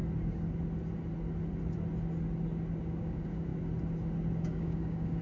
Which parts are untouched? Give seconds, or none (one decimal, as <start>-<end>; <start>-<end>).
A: 0.0-2.8; 3.5-4.4